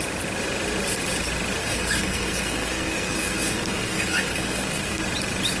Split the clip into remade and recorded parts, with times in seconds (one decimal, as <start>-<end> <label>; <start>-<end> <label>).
0.0-1.6 recorded; 1.6-5.0 remade; 5.0-5.6 recorded